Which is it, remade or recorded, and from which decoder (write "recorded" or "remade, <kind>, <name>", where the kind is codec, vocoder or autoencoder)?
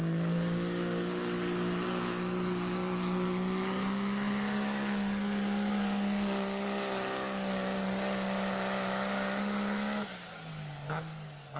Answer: remade, codec, DAC